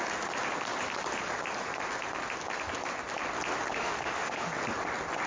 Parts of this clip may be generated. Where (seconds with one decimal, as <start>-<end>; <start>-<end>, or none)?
3.7-4.5